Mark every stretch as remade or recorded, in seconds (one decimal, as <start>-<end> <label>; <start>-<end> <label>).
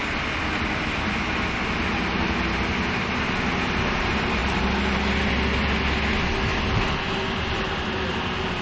0.0-8.6 recorded